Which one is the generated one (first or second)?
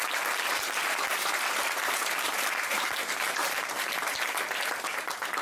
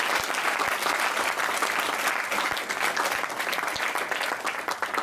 first